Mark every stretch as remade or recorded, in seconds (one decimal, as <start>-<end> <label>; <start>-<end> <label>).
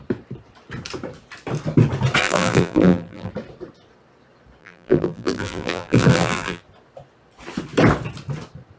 0.0-2.2 recorded; 2.2-3.3 remade; 3.3-4.6 recorded; 4.6-6.6 remade; 6.6-8.8 recorded